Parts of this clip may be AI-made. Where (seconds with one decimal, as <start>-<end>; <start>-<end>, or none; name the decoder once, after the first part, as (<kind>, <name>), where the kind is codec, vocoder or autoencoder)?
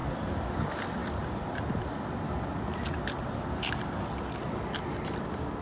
none